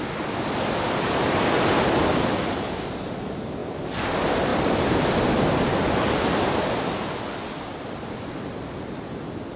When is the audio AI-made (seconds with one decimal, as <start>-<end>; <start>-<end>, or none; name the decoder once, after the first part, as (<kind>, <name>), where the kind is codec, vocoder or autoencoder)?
none